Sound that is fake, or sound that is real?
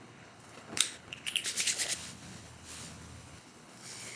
fake